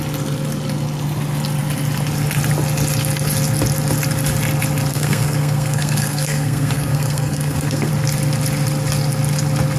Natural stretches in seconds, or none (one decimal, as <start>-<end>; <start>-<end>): 0.0-4.9; 7.9-9.8